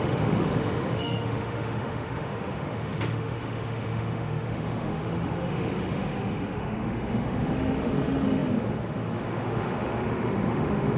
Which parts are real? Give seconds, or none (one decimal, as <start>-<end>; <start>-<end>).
none